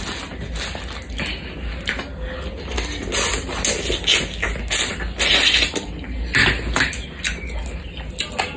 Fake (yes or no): no